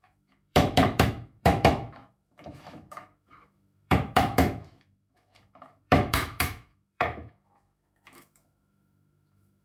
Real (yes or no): no